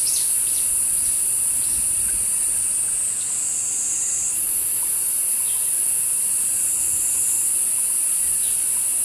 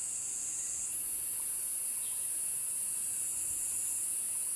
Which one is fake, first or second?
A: second